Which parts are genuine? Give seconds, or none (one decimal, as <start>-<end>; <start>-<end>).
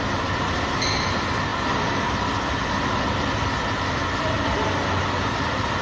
0.0-5.8